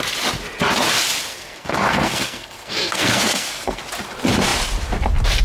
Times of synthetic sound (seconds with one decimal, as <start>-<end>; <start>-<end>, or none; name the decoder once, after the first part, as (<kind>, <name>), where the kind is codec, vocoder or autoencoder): 1.3-3.8 (codec, SNAC)